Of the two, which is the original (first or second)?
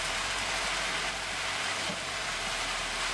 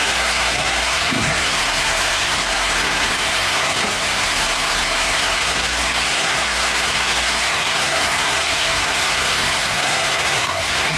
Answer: first